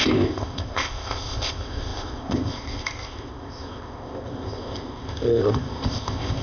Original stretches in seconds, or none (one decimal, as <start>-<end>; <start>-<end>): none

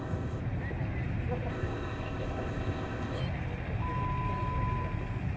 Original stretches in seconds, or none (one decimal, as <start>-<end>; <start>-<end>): 0.4-1.5; 3.2-5.4

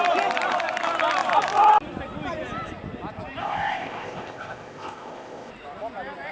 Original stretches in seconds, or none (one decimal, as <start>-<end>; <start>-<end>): 0.0-3.4; 5.5-6.3

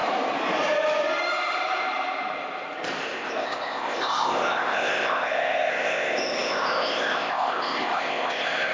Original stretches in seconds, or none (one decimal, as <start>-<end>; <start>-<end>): 0.0-3.0

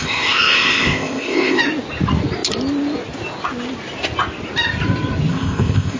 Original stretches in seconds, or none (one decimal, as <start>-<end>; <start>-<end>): 1.6-5.3